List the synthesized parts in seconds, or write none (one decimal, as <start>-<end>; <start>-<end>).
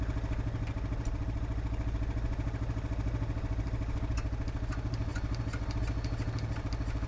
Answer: none